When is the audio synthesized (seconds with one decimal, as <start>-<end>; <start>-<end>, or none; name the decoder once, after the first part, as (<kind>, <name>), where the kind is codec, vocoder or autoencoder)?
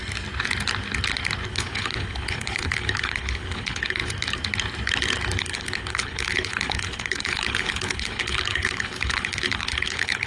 1.5-4.0 (codec, HILCodec); 5.4-10.3